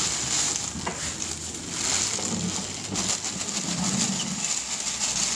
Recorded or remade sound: recorded